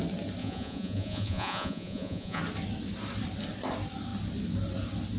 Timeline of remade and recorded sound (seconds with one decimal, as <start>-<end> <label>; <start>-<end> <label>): 0.0-0.4 recorded; 0.4-2.4 remade; 2.4-5.2 recorded